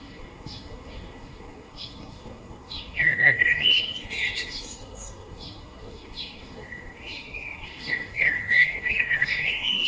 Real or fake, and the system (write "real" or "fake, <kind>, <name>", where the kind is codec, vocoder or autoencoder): fake, codec, SNAC